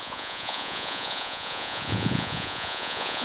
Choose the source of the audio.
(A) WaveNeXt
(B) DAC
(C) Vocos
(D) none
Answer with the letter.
C